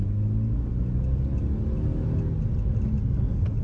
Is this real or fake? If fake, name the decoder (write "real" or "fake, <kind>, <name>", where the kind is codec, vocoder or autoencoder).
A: real